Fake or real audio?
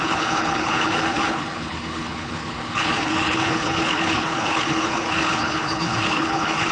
fake